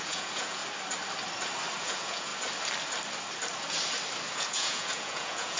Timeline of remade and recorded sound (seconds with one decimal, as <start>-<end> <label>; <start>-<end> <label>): 0.0-0.6 remade; 0.6-1.8 recorded; 1.8-2.3 remade; 2.3-4.3 recorded; 4.3-5.6 remade